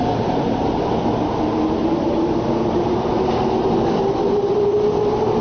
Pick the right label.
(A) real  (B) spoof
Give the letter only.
A